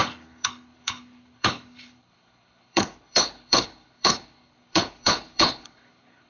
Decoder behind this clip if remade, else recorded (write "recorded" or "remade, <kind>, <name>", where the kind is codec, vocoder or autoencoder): remade, codec, HILCodec